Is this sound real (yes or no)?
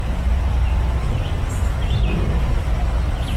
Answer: yes